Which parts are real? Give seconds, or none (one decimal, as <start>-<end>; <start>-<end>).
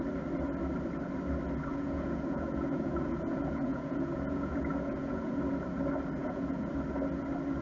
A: 0.0-1.7; 5.4-6.2; 6.7-7.6